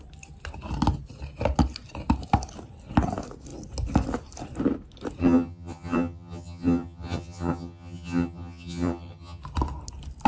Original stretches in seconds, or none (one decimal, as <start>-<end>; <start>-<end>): 0.0-5.2; 9.4-10.3